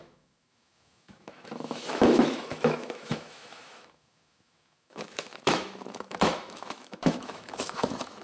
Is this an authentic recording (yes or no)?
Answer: no